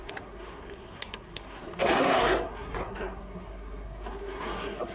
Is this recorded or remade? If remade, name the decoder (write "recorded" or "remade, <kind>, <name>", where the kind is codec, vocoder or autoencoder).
remade, codec, SNAC